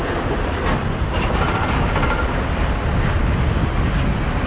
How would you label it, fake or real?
real